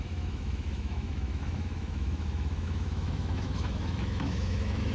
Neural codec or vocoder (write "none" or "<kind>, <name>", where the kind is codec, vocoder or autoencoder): autoencoder, DAC-VAE